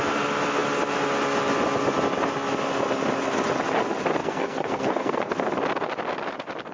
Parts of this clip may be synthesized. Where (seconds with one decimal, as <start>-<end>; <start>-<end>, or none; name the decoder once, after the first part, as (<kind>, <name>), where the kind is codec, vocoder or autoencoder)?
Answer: 4.2-5.3 (codec, SNAC)